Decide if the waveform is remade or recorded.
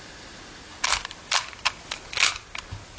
recorded